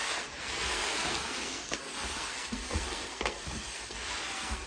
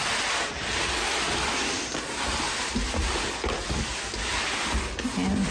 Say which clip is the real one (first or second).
second